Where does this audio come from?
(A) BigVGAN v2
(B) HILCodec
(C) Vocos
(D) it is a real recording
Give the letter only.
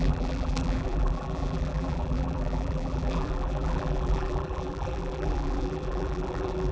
A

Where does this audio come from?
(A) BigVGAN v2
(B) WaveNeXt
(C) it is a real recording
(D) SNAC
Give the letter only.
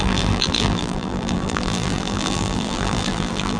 A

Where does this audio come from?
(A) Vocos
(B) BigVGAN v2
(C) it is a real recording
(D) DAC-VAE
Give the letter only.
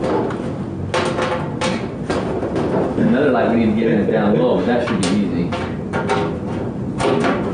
C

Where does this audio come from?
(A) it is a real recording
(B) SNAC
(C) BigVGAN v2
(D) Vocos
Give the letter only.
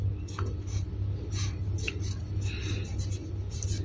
A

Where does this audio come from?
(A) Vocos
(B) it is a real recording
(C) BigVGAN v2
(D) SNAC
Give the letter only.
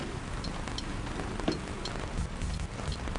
B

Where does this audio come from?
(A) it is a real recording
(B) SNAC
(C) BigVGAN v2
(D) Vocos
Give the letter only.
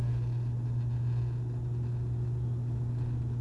A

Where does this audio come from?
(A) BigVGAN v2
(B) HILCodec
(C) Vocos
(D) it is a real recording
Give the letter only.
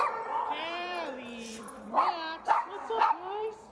A